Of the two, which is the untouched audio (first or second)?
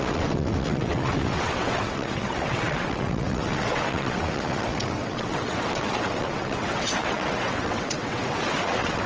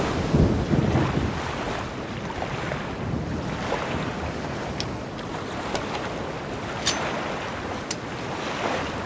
second